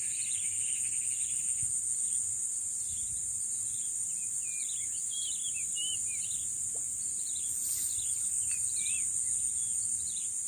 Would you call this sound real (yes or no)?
yes